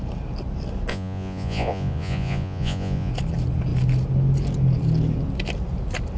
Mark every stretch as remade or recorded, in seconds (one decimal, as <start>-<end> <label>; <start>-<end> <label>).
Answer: 0.0-0.9 recorded; 0.9-3.1 remade; 3.1-6.2 recorded